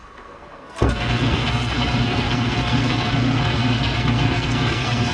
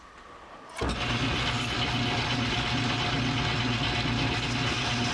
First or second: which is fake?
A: first